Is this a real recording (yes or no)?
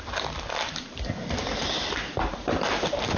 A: no